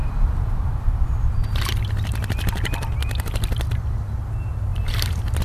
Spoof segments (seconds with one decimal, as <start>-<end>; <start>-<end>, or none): 0.0-1.3; 4.7-5.4